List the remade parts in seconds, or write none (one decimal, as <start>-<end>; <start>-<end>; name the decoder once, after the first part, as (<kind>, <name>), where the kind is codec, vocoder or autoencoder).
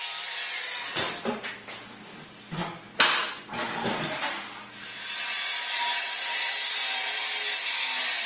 0.0-3.2 (vocoder, BigVGAN v2); 6.0-7.2; 7.7-8.3